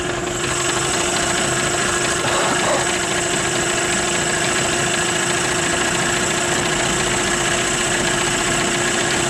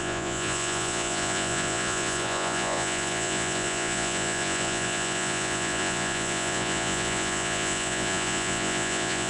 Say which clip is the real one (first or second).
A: first